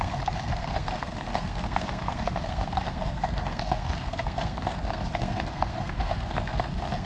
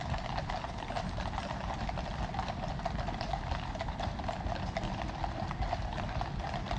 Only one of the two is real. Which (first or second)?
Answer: second